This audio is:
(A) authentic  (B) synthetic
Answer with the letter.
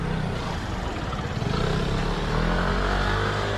A